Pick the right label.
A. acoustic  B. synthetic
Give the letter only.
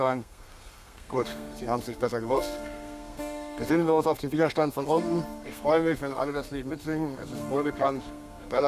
B